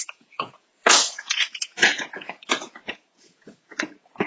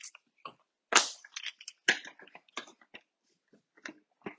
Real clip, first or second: second